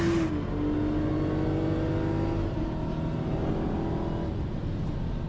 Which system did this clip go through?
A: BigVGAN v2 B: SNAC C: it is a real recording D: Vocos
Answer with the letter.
C